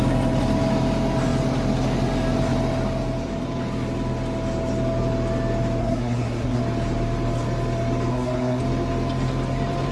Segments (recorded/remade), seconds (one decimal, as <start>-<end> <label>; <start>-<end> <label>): 0.0-5.8 recorded; 5.8-6.6 remade; 6.6-8.1 recorded; 8.1-8.6 remade; 8.6-9.9 recorded